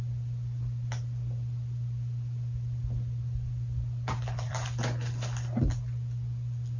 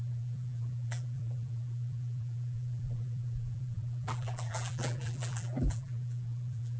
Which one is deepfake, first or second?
second